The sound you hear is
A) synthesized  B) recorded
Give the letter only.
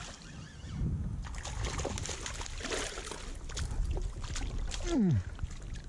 B